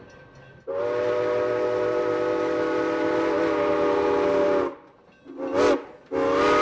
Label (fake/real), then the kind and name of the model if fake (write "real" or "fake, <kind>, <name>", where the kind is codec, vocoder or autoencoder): real